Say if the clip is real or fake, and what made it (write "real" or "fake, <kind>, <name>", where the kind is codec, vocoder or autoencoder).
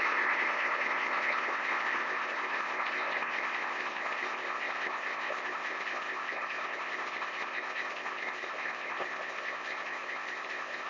fake, codec, ZipCodec